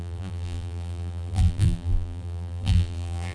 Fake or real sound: fake